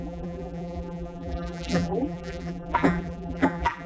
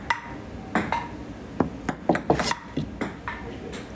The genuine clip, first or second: second